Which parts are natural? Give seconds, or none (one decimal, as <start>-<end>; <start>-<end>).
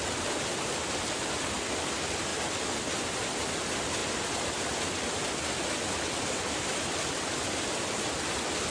0.0-8.7